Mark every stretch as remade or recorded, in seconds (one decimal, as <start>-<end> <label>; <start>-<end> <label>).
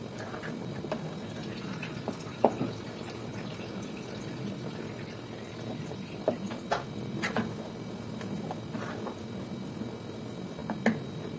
0.0-11.4 recorded